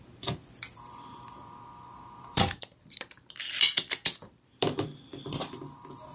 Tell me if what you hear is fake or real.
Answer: fake